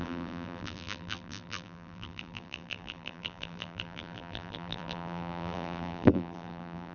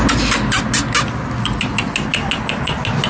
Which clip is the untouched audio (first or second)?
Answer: second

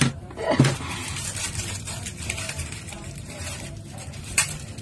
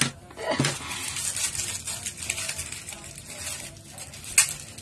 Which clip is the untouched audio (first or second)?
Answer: second